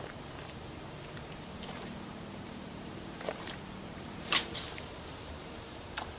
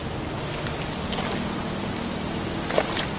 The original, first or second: second